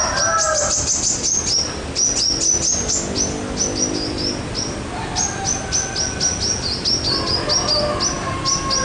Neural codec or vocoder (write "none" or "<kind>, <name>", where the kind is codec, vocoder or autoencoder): none